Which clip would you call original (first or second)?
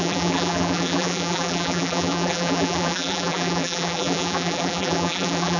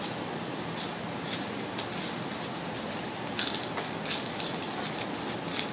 second